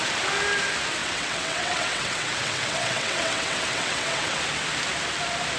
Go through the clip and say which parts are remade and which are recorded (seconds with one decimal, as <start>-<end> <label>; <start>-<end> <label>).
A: 0.0-1.0 recorded; 1.0-4.4 remade; 4.4-5.6 recorded

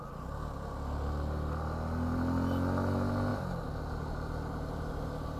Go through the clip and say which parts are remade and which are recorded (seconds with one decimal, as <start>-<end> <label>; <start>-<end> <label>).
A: 0.0-5.4 recorded

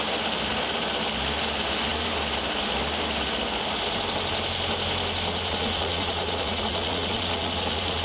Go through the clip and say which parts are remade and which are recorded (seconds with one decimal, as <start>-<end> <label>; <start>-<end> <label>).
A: 0.0-5.3 recorded; 5.3-8.0 remade

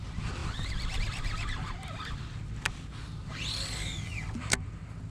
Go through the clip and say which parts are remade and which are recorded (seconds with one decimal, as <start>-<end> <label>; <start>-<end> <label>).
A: 0.0-5.1 recorded

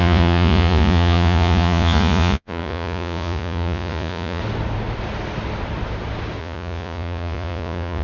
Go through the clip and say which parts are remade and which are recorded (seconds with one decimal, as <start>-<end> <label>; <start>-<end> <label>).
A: 0.0-4.4 remade; 4.4-6.4 recorded; 6.4-8.0 remade